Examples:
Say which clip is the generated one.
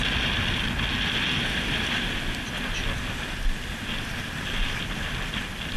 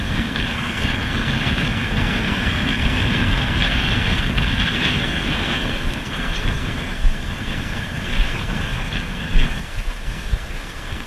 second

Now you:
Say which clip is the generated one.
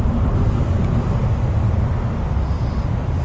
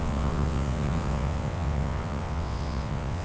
second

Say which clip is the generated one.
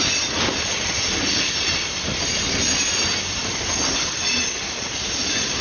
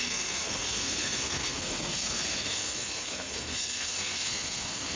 second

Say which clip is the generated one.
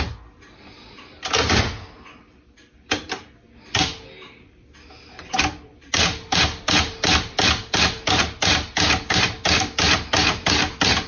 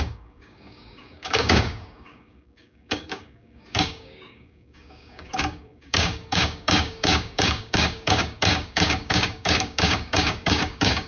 second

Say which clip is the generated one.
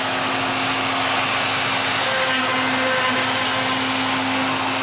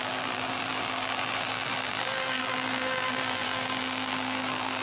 second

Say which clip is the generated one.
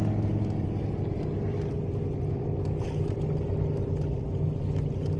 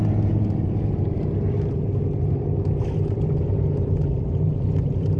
second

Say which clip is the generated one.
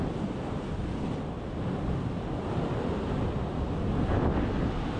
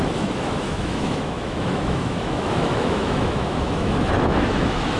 second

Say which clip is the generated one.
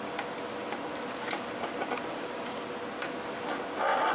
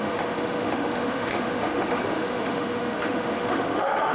second